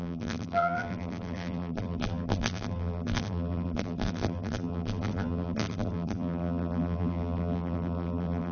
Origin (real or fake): fake